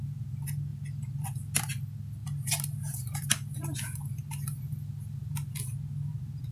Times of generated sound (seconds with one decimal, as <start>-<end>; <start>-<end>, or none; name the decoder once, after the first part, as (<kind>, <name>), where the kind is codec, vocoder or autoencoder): none